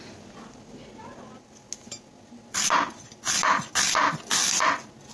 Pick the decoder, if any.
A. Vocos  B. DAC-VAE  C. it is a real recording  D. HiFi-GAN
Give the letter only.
C